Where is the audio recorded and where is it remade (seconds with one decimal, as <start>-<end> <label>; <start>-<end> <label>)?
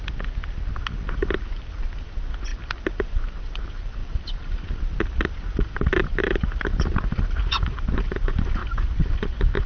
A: 0.0-9.7 recorded